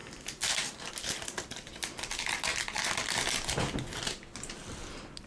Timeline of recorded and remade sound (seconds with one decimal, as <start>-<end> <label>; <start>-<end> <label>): 0.0-5.3 recorded